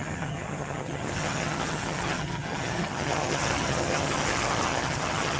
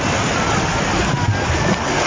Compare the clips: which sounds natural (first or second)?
second